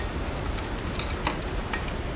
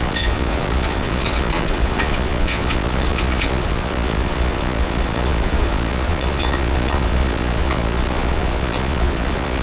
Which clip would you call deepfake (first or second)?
second